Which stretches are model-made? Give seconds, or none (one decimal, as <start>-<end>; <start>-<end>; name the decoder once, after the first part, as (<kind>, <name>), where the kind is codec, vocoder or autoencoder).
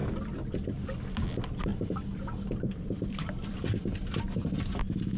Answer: 1.7-4.8 (vocoder, BigVGAN v2)